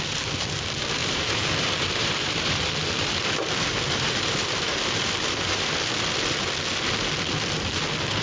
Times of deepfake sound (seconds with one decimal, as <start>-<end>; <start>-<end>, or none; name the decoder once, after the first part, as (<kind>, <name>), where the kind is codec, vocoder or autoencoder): 1.0-5.9 (vocoder, BigVGAN v2)